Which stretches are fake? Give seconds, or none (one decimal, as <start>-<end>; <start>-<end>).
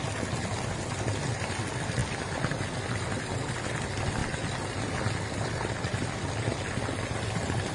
none